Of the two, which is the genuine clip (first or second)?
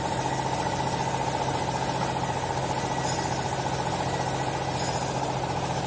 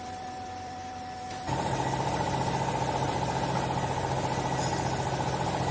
first